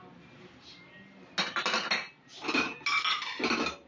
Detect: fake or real real